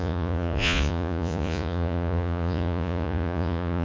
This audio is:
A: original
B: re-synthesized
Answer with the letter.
B